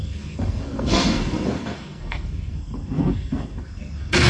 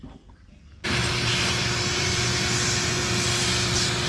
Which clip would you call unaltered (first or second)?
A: second